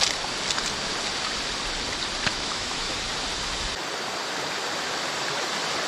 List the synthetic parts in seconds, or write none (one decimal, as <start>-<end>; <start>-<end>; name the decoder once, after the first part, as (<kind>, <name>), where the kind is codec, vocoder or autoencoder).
2.3-2.9 (autoencoder, DAC-VAE)

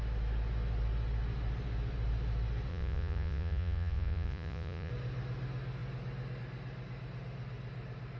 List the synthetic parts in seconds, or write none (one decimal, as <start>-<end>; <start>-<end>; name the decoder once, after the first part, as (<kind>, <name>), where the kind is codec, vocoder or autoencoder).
2.7-4.9 (vocoder, Vocos)

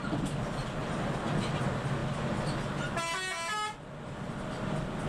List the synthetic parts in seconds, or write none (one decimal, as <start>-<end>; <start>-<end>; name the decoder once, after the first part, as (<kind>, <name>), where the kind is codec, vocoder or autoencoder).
none

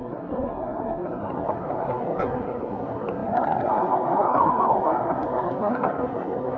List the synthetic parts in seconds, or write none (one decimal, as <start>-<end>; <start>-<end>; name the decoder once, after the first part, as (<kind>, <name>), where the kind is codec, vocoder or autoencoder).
0.0-6.6 (codec, SNAC)

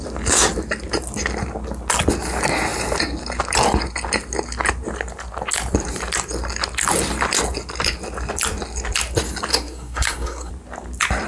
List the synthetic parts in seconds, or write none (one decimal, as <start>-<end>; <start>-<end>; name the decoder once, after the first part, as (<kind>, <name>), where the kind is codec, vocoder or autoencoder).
9.5-10.5 (codec, SNAC)